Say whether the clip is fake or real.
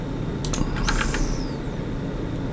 real